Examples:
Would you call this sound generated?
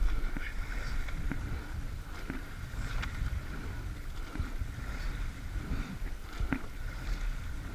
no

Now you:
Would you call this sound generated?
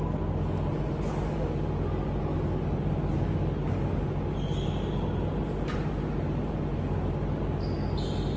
no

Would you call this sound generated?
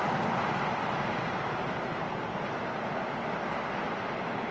no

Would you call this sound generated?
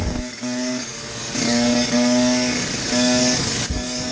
yes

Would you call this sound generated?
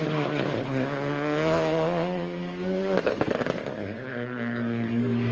yes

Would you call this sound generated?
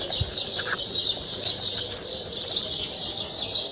no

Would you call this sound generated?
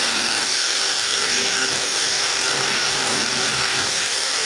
yes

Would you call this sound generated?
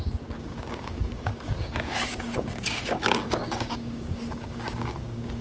yes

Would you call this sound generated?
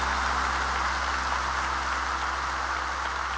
no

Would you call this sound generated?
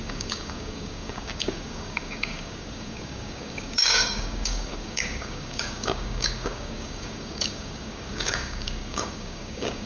yes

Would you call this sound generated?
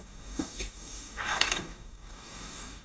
yes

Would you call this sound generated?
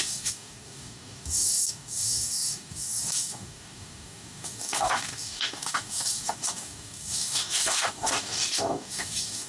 yes